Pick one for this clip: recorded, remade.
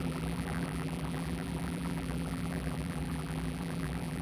remade